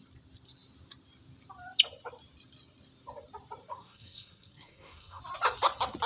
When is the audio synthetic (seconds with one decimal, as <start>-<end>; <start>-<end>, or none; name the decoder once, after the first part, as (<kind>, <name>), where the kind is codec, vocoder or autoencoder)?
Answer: 3.7-5.2 (codec, SNAC)

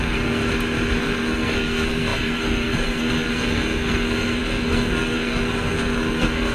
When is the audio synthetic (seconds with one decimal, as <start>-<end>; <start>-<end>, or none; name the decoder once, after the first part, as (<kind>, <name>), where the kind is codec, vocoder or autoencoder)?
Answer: 0.0-0.4 (codec, SNAC); 1.0-6.5

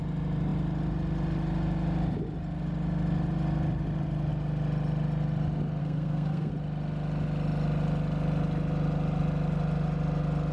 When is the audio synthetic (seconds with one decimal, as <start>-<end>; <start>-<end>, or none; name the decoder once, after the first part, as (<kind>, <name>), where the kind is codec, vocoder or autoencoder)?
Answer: 5.8-6.5 (codec, SNAC)